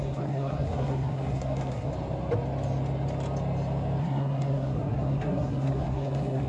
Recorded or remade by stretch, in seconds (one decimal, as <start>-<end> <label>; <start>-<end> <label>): 0.0-1.9 remade; 1.9-4.0 recorded; 4.0-6.5 remade